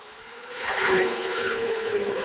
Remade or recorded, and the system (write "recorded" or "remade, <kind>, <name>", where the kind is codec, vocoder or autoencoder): remade, codec, HILCodec